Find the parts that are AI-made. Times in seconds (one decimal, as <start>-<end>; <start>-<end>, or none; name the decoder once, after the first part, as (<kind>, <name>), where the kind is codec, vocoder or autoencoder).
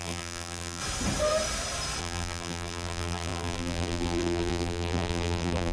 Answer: 0.0-0.8 (vocoder, BigVGAN v2); 2.0-5.7